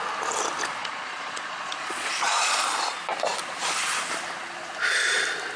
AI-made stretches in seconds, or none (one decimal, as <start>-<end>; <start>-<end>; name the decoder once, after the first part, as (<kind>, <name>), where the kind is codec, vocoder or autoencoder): 0.8-2.8 (vocoder, Vocos)